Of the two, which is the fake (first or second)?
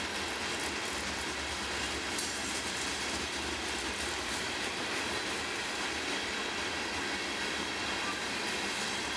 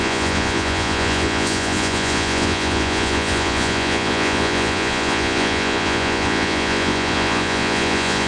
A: second